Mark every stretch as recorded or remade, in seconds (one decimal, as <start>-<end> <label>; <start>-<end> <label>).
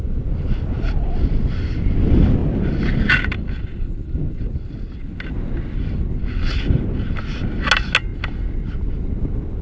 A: 0.0-9.6 recorded